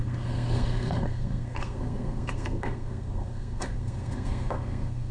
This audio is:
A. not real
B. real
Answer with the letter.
A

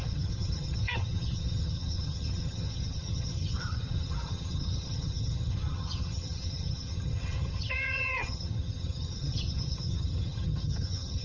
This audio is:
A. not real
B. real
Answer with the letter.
A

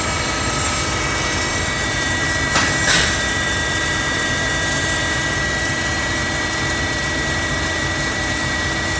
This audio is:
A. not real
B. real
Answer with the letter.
A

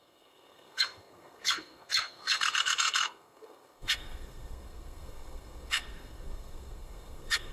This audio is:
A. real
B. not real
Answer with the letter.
B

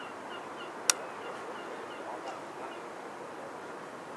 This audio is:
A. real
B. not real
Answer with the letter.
A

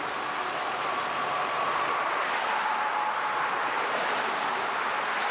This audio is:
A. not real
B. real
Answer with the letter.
B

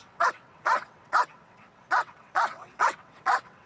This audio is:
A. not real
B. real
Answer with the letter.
A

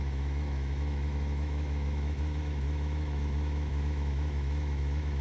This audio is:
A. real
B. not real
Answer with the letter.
B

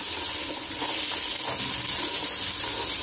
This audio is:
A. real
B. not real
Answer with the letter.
A